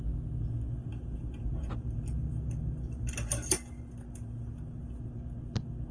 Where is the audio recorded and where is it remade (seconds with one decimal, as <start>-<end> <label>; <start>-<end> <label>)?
0.0-5.9 recorded